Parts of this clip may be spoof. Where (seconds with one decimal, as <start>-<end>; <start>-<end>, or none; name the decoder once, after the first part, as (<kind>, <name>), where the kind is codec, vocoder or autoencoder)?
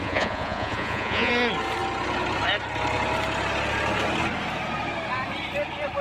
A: 0.0-1.3 (vocoder, Vocos)